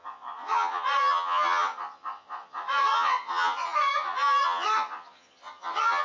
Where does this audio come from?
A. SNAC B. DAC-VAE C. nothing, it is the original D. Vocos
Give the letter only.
D